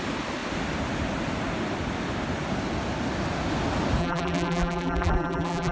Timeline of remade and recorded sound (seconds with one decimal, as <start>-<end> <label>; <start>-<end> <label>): 0.0-4.0 recorded; 4.0-5.7 remade